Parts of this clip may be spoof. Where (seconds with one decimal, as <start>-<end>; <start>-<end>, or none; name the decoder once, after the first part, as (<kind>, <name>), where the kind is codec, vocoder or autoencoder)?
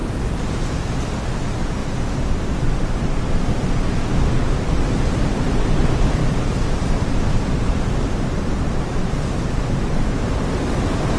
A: 1.3-1.8 (vocoder, BigVGAN v2); 2.5-6.2; 6.8-9.6